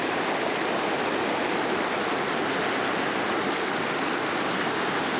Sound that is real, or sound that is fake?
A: real